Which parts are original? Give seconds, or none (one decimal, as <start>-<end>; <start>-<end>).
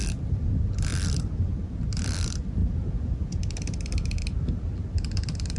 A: 0.0-2.6; 3.4-5.6